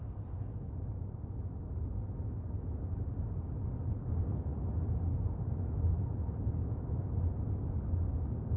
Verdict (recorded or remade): recorded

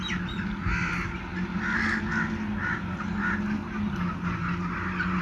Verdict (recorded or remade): recorded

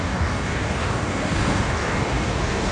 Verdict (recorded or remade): remade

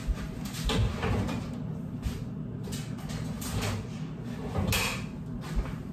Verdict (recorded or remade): recorded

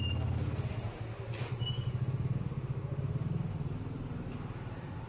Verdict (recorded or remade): recorded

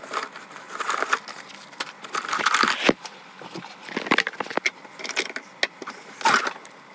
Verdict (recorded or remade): recorded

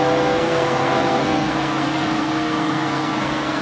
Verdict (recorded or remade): remade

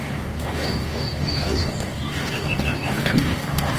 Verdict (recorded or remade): remade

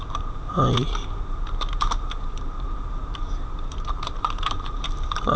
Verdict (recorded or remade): remade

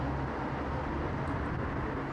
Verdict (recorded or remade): recorded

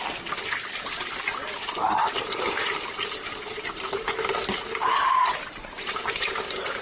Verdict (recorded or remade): recorded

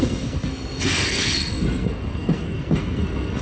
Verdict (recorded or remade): remade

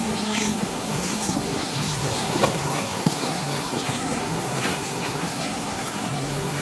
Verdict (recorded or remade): remade